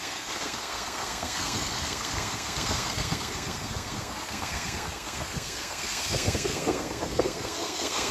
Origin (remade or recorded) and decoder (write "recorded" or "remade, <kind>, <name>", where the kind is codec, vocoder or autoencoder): remade, codec, SNAC